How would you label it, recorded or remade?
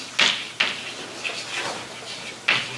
recorded